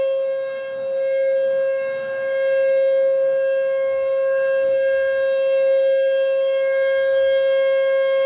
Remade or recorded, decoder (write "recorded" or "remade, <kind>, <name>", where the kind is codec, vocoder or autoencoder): remade, codec, DAC